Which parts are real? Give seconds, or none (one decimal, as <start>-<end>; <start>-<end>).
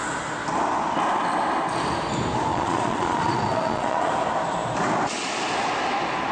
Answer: 0.0-2.5; 4.1-6.3